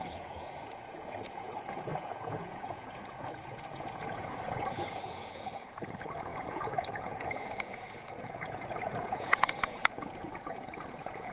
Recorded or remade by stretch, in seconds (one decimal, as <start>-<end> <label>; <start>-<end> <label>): 0.0-11.3 remade